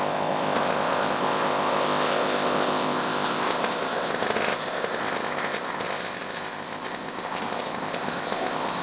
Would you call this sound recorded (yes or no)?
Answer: no